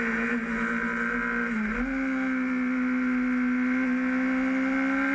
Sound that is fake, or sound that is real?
real